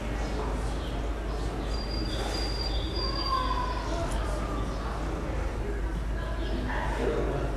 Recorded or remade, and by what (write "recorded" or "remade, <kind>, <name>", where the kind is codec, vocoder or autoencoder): recorded